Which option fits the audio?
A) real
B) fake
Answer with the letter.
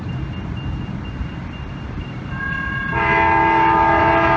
A